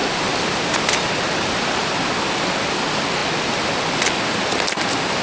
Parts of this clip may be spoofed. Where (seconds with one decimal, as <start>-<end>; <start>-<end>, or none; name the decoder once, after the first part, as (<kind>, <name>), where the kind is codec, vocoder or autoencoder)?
0.0-2.0 (vocoder, BigVGAN v2)